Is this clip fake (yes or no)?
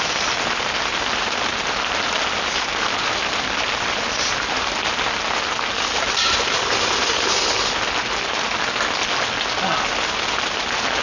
no